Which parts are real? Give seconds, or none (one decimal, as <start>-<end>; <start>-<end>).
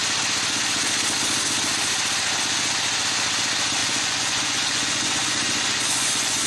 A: 0.0-3.8